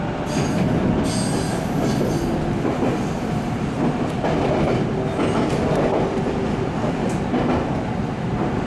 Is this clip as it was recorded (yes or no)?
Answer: yes